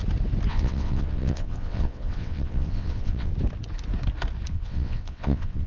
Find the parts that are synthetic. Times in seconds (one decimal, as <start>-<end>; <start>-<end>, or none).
0.5-3.3; 4.5-5.7